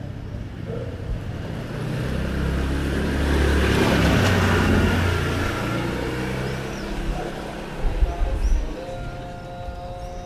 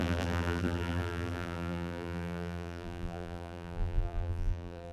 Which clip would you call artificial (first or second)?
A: second